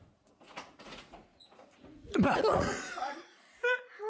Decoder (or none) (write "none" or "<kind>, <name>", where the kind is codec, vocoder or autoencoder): vocoder, Vocos